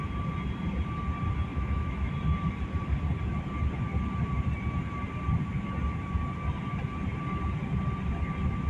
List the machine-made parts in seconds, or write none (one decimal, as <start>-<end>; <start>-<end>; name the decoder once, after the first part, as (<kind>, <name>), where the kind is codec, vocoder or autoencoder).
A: 1.5-2.1 (autoencoder, DAC-VAE)